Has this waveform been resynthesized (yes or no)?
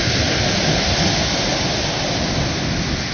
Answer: no